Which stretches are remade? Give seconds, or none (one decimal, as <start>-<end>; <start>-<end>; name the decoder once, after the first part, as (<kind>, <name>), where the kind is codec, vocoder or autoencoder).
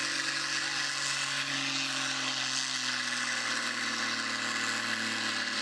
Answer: none